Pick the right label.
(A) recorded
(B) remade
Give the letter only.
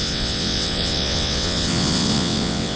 B